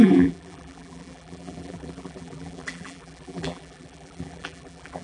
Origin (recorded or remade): remade